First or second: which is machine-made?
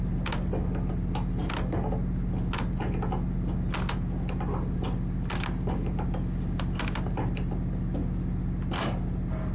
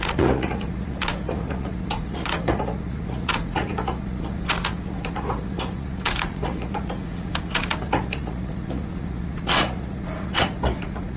second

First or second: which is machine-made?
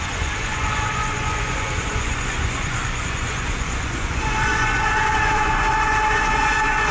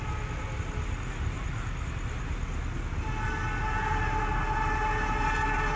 first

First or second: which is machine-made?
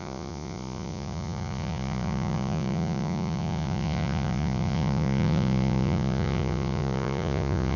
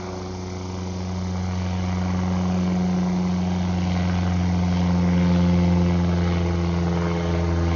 first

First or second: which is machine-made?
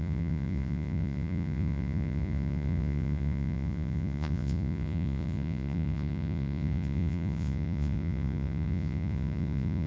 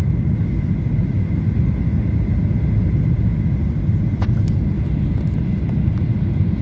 first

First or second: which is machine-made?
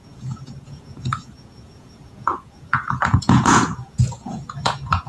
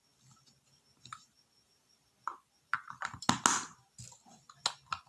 first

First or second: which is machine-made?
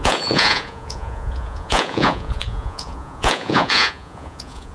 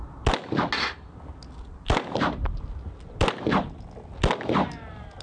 first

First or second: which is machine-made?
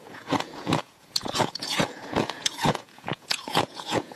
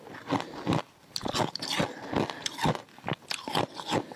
first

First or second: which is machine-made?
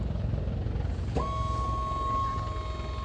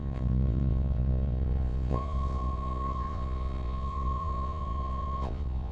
second